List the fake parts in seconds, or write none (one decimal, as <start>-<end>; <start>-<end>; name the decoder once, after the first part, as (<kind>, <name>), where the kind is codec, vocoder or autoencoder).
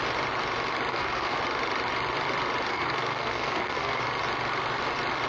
0.9-1.4 (codec, SNAC); 2.7-4.0